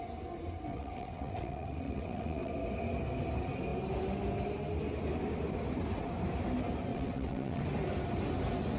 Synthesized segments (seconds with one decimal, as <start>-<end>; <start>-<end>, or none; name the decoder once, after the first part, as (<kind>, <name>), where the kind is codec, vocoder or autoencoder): 0.7-2.5 (vocoder, WaveNeXt); 6.9-7.6